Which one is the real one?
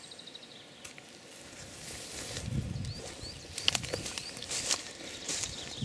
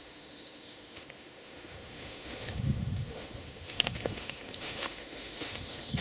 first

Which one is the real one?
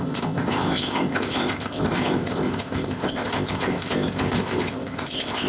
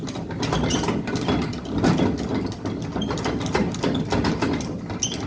second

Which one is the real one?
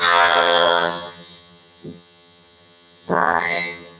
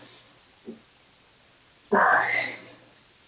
second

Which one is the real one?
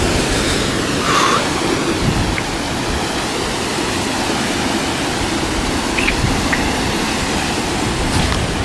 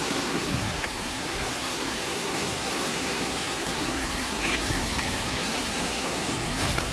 first